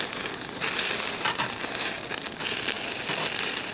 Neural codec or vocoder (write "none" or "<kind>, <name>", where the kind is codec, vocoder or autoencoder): none